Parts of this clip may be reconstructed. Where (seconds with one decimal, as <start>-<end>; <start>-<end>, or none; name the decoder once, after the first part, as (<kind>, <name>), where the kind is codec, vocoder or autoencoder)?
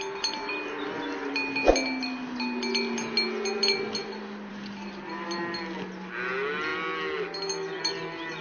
none